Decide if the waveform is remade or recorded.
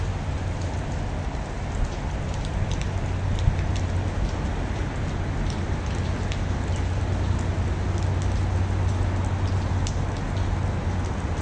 recorded